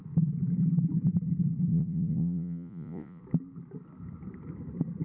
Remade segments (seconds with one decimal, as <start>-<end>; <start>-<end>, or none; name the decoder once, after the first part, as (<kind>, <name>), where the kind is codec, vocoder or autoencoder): 1.7-3.2 (vocoder, Vocos)